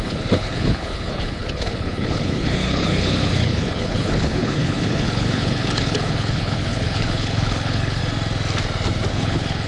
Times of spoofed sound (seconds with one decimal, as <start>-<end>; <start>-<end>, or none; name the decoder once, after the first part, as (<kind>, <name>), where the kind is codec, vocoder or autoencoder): 0.0-8.0 (codec, HILCodec); 9.1-9.7